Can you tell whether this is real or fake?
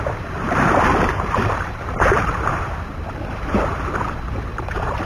fake